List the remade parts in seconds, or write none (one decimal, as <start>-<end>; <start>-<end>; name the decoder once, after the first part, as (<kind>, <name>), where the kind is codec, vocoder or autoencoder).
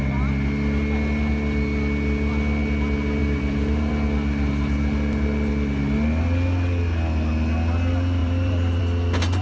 3.2-3.9 (vocoder, BigVGAN v2); 8.2-8.8